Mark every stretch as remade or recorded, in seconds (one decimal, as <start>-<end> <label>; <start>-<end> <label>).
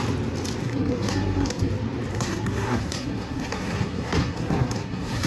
0.0-0.6 recorded; 0.6-1.7 remade; 1.7-2.1 recorded; 2.1-5.3 remade